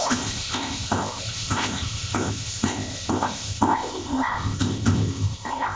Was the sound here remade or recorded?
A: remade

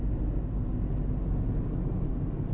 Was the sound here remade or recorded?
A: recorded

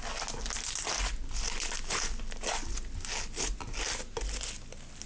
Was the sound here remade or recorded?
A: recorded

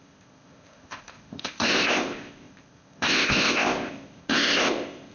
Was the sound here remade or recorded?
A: remade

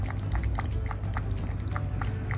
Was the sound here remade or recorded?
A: recorded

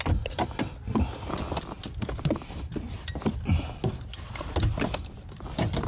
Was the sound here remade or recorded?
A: recorded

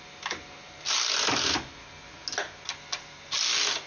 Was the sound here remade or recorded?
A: recorded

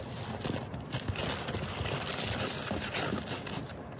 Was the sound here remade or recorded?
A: recorded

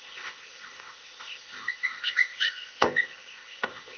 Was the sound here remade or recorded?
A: remade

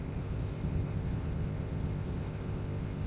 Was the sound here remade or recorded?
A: remade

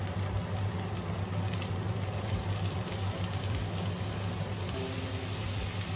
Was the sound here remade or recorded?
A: recorded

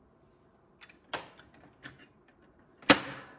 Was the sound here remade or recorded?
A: recorded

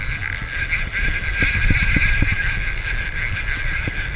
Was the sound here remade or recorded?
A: recorded